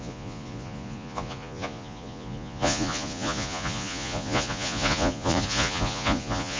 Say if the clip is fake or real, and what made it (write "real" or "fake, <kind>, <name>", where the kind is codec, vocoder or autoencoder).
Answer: fake, vocoder, Vocos